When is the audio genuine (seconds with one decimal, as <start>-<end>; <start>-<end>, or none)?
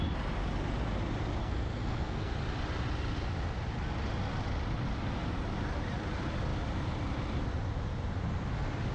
0.0-1.4; 2.3-8.9